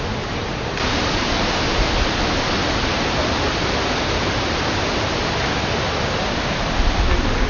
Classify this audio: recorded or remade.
recorded